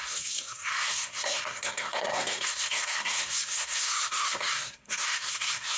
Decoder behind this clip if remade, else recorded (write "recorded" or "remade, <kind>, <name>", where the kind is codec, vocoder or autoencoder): remade, codec, SNAC